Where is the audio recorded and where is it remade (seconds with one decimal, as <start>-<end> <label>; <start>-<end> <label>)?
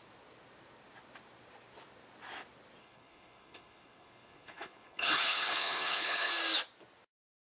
0.0-2.8 recorded; 2.8-6.3 remade; 6.3-7.6 recorded